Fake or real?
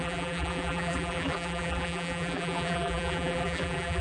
fake